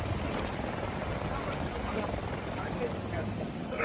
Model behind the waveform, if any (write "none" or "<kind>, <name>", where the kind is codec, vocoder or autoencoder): none